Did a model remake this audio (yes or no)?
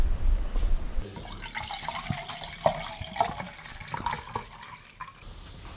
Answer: no